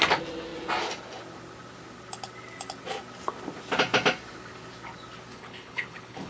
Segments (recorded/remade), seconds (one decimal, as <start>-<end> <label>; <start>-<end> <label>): 0.0-5.3 recorded; 5.3-6.3 remade